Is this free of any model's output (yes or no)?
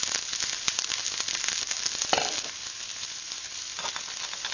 yes